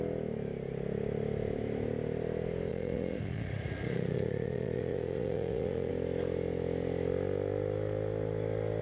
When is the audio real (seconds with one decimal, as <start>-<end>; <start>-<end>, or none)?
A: 0.0-2.7; 5.9-8.8